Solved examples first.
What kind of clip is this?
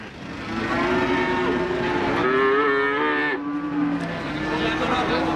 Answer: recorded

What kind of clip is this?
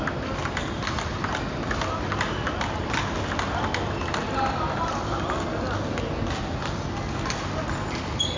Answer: recorded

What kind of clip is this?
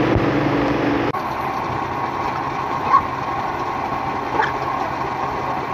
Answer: recorded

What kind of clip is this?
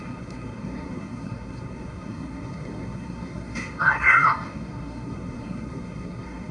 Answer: remade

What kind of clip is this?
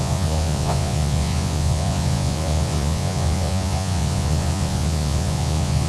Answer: remade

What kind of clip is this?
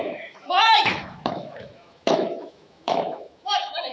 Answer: remade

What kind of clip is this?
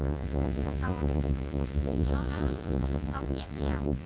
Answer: remade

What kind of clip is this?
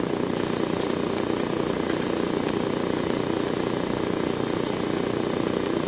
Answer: recorded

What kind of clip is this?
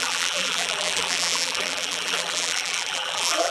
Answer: remade